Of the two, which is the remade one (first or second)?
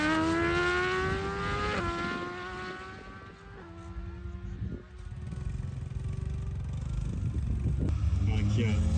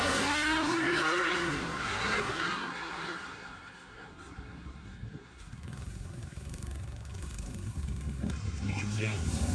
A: second